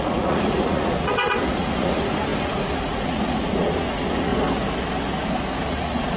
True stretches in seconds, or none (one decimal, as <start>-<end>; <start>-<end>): 4.3-5.7